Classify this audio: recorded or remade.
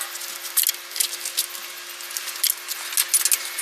recorded